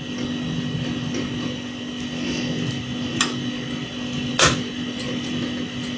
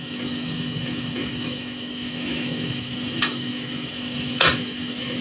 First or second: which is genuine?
first